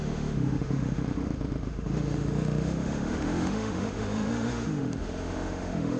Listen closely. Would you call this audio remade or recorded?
remade